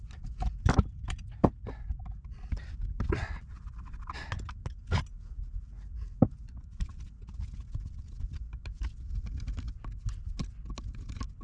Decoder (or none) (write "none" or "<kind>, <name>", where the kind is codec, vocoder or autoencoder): none